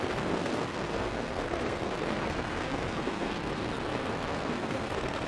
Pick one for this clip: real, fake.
fake